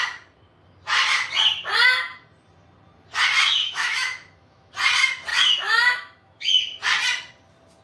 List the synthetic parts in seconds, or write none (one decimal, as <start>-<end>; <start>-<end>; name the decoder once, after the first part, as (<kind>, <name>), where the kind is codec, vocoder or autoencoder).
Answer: 3.6-4.7 (autoencoder, DAC-VAE); 5.3-6.5

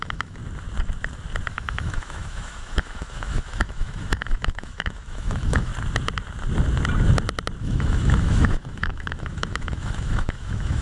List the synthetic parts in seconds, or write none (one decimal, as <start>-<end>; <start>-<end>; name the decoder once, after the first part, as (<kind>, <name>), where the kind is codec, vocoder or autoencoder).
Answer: 0.0-0.4 (autoencoder, DAC-VAE); 1.5-5.7; 7.6-10.8

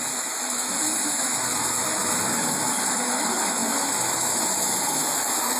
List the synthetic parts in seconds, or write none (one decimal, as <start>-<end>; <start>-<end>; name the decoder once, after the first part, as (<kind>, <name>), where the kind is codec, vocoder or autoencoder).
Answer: 0.0-5.6 (autoencoder, DAC-VAE)